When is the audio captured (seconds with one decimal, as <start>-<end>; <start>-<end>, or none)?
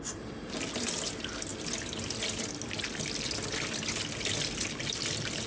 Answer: 0.0-5.5